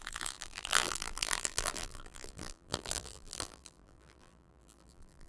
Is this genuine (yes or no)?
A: no